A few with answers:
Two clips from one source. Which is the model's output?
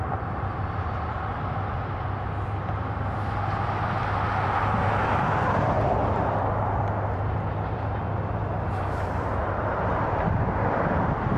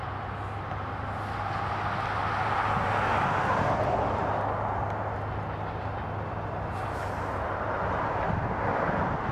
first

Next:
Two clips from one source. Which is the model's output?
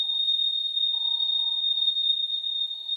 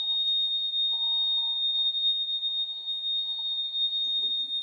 first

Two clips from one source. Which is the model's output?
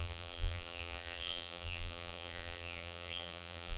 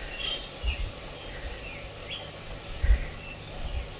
first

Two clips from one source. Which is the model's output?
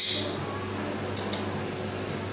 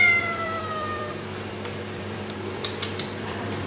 second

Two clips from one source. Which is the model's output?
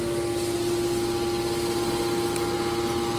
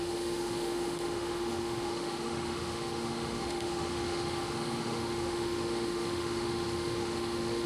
second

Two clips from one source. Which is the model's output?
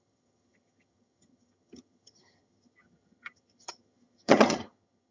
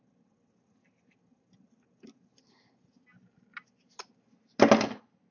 first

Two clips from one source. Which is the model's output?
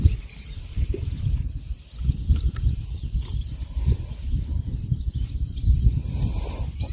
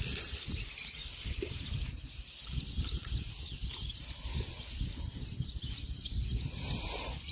first